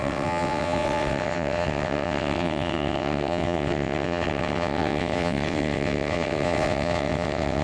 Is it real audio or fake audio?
fake